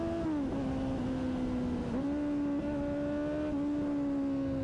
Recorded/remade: recorded